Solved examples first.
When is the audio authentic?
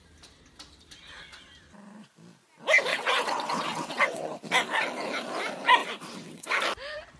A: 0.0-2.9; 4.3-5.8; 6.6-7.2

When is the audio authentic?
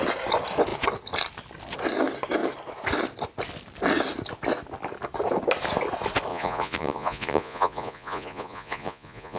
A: 0.0-6.3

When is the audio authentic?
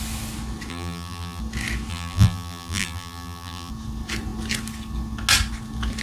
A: 0.0-0.7; 1.4-1.9; 3.7-6.0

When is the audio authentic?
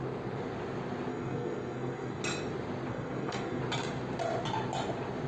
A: 0.0-1.1; 2.2-2.9; 3.6-5.3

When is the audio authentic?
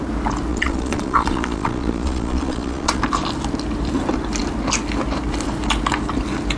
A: 0.0-0.5; 3.0-6.6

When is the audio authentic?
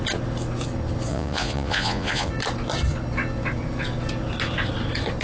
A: 0.0-1.1; 2.3-5.2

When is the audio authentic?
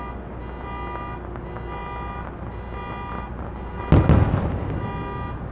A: 0.0-5.5